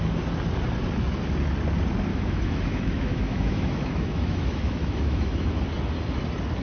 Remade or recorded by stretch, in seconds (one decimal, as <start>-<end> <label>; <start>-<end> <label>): 0.0-2.1 recorded; 2.1-5.5 remade; 5.5-6.6 recorded